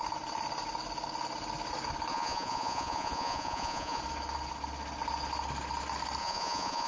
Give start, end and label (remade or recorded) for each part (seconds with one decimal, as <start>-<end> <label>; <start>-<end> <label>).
0.0-2.1 recorded; 2.1-4.0 remade; 4.0-6.2 recorded; 6.2-6.9 remade